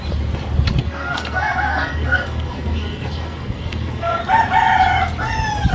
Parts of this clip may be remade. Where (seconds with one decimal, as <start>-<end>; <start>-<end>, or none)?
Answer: 0.8-4.2